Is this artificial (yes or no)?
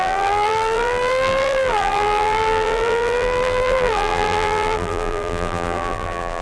yes